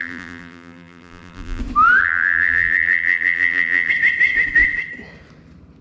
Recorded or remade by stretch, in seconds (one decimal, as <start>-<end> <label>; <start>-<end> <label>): 0.0-1.6 remade; 1.6-2.0 recorded; 2.0-3.9 remade; 3.9-5.8 recorded

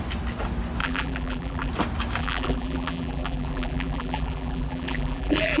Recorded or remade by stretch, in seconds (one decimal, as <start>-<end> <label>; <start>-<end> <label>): 0.0-0.8 recorded; 0.8-1.7 remade; 1.7-2.2 recorded; 2.2-5.6 remade

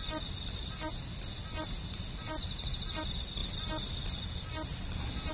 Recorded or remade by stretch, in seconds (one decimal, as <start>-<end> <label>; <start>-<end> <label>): 0.0-5.3 recorded